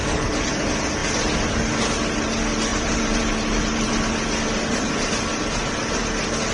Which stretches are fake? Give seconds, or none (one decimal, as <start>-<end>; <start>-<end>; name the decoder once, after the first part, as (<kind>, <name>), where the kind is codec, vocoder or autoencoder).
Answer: 0.0-0.5 (vocoder, BigVGAN v2); 2.7-3.9